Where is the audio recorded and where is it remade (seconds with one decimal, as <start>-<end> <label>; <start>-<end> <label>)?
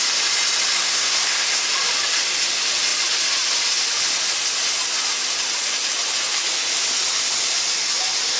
0.0-0.8 recorded; 0.8-1.7 remade; 1.7-8.4 recorded